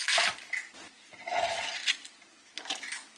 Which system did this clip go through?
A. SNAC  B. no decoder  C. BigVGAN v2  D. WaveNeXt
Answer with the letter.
B